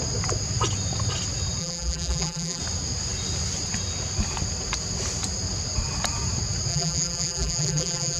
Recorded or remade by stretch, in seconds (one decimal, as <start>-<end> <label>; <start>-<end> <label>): 0.0-1.6 recorded; 1.6-2.6 remade; 2.6-6.7 recorded; 6.7-8.2 remade